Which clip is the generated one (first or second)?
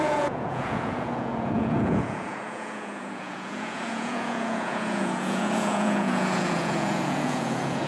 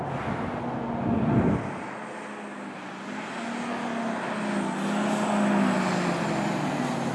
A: first